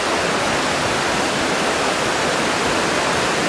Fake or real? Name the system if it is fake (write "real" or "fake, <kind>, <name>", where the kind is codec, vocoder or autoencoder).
real